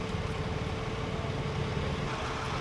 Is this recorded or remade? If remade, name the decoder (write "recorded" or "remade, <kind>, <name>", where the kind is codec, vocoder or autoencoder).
recorded